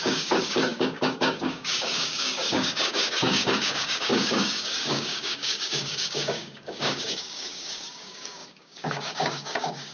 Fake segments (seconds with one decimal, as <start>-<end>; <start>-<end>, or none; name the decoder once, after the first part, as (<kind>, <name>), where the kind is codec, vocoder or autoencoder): 0.0-9.9 (codec, DAC)